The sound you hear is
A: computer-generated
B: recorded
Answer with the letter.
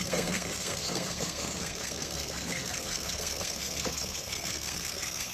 A